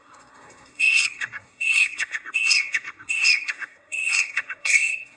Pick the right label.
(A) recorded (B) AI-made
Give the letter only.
B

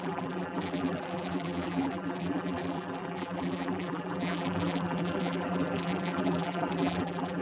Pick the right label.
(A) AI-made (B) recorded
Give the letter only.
A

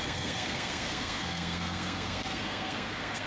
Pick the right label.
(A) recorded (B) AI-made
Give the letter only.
B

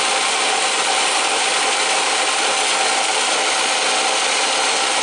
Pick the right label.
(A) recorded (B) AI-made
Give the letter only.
A